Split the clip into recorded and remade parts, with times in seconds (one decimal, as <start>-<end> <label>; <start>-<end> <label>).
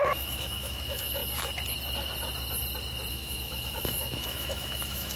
0.0-1.2 remade; 1.2-3.1 recorded; 3.1-5.2 remade